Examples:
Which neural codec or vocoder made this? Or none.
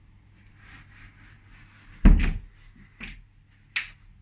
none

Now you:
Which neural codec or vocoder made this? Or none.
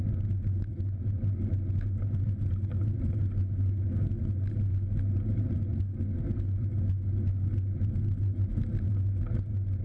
none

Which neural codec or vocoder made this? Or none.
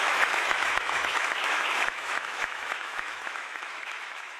autoencoder, DAC-VAE